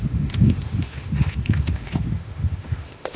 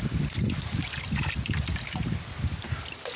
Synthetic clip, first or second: first